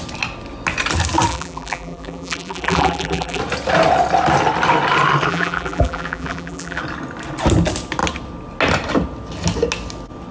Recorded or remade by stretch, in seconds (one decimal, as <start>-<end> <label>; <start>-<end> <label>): 0.0-1.3 recorded; 1.3-3.4 remade; 3.4-5.3 recorded; 5.3-6.8 remade; 6.8-10.3 recorded